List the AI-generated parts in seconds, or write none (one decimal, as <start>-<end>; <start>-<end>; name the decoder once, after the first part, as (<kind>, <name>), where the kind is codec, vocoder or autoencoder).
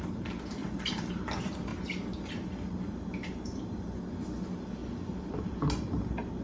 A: 0.6-1.1 (vocoder, BigVGAN v2); 4.8-5.6